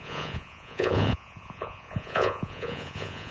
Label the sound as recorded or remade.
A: remade